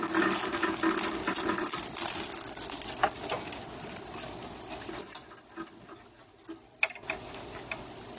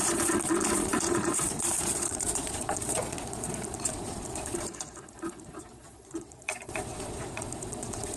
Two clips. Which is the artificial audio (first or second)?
second